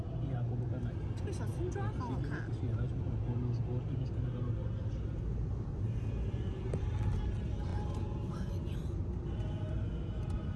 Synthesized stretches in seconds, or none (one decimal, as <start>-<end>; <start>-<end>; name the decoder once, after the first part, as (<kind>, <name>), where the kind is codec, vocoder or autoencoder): none